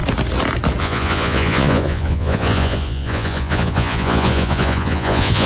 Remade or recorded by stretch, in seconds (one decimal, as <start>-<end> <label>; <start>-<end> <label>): 0.0-0.8 recorded; 0.8-5.5 remade